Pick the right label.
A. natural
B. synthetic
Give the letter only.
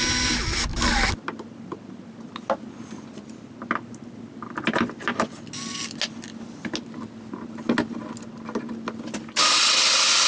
A